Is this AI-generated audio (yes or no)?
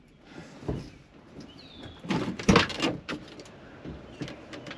no